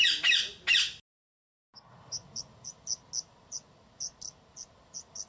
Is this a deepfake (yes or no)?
no